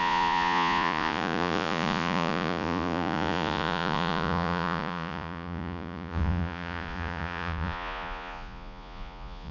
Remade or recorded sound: remade